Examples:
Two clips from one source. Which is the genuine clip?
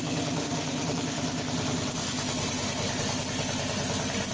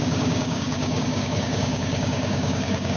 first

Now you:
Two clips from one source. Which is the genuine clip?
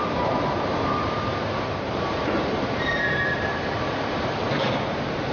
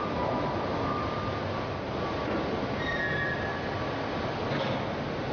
second